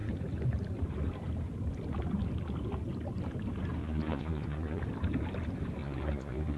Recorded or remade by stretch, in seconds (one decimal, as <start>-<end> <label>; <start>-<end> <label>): 0.0-3.8 recorded; 3.8-4.8 remade; 4.8-5.8 recorded; 5.8-6.6 remade